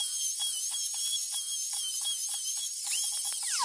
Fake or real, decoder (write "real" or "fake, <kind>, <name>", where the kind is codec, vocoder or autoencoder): real